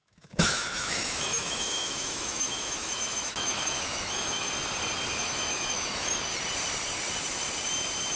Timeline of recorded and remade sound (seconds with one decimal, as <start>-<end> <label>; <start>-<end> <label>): 0.0-4.5 remade; 4.5-5.2 recorded; 5.2-6.1 remade; 6.1-8.2 recorded